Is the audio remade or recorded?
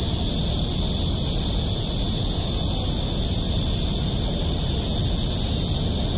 recorded